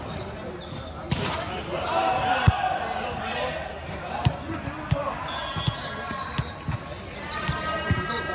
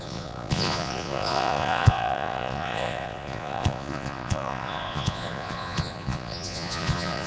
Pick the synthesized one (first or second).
second